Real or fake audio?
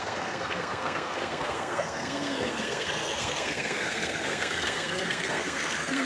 fake